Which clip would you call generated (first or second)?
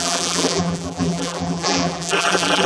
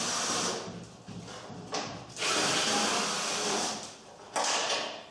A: first